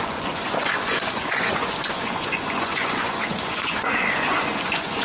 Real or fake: fake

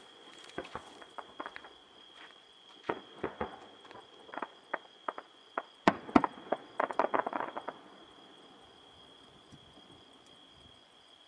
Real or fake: fake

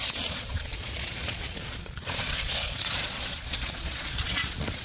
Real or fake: fake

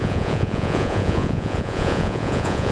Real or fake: fake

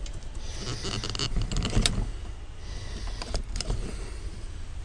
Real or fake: real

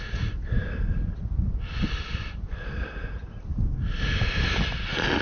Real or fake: real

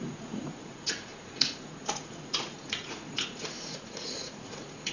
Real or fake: fake